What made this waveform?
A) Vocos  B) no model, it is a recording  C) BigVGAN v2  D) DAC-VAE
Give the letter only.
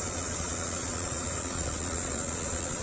A